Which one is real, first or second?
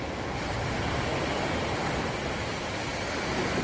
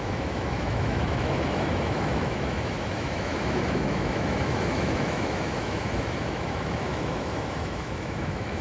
first